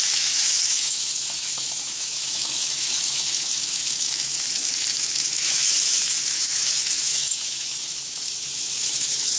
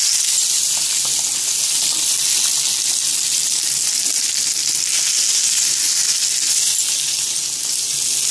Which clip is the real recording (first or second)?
second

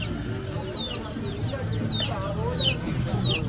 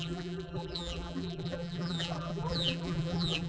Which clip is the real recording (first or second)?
first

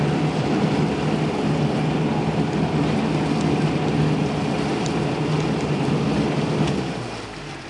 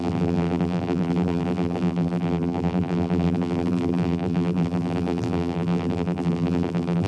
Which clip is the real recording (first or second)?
first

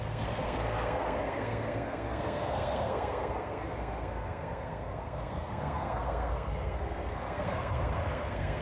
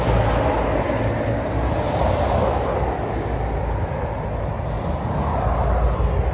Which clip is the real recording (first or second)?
second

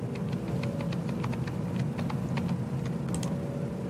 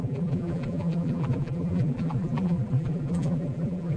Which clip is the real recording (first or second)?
first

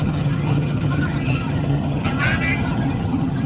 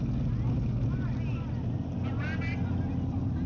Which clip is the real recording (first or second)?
second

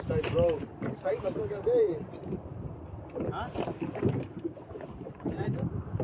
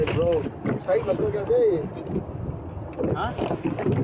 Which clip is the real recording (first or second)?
second